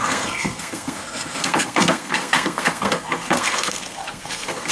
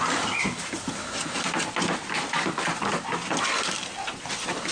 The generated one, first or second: first